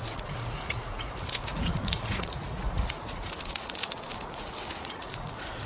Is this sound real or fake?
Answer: fake